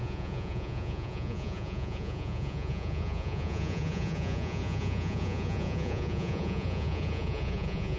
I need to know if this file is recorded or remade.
remade